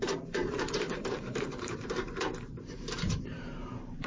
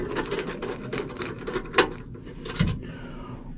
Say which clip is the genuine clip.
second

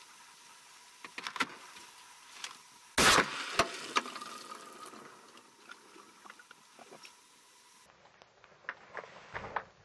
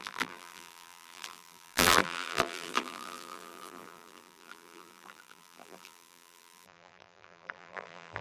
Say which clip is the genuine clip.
first